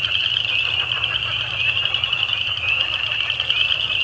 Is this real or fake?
real